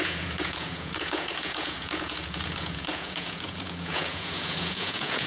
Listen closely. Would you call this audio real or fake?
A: fake